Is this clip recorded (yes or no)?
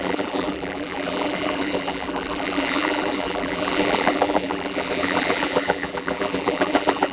no